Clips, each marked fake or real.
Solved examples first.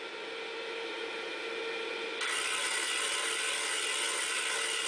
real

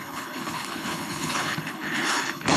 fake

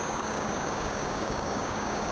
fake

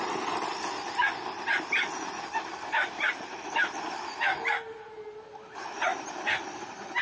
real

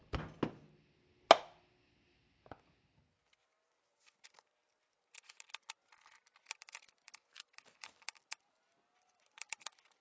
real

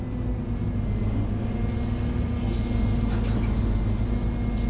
real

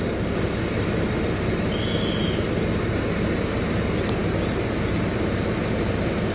real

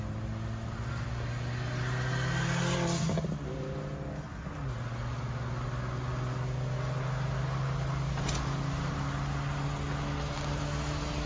real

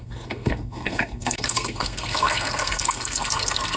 fake